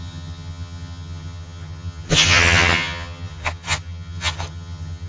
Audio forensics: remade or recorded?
remade